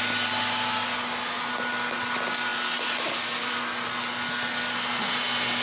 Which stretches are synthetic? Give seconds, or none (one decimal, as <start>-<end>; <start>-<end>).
none